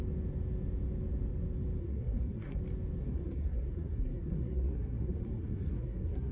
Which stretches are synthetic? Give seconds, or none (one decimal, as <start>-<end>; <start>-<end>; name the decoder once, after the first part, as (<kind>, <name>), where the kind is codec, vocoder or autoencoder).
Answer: 1.8-2.6 (codec, SNAC); 3.0-6.3